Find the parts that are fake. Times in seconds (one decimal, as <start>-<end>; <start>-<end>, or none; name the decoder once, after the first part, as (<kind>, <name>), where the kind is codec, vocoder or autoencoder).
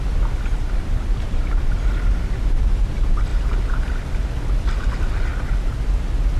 0.5-1.7 (vocoder, BigVGAN v2)